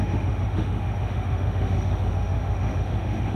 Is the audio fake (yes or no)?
yes